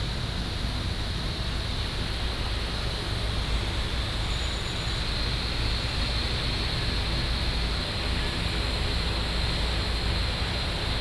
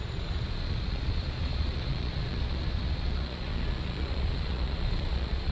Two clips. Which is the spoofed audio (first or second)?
second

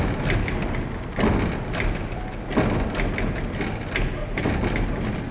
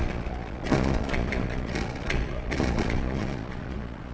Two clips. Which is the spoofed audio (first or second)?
second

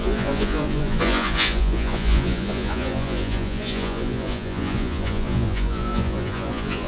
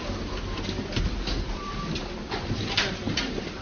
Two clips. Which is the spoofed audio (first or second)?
first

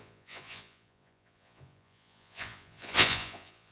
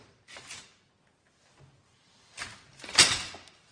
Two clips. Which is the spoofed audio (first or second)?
first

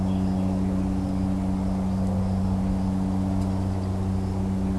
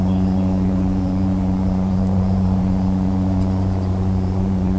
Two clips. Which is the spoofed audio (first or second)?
second